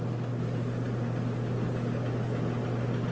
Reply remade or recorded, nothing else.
recorded